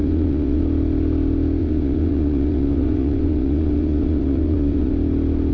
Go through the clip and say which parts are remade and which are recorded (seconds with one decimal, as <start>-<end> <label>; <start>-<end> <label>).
0.0-0.6 remade; 0.6-1.6 recorded; 1.6-4.9 remade; 4.9-5.5 recorded